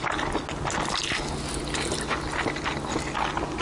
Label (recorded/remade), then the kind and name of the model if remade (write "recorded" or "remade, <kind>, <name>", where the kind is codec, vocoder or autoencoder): recorded